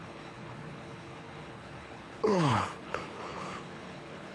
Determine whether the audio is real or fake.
fake